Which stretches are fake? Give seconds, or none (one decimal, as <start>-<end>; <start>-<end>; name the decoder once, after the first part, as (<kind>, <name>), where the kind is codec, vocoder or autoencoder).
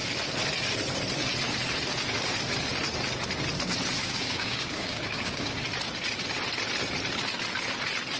4.0-5.6 (codec, DAC)